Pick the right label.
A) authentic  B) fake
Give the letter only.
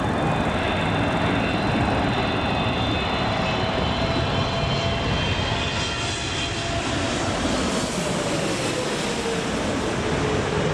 A